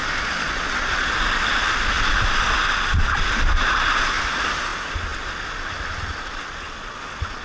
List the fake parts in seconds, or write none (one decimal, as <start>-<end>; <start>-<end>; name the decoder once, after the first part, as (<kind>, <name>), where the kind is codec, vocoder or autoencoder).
none